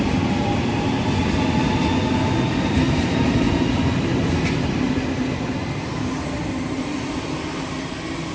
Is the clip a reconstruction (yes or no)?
no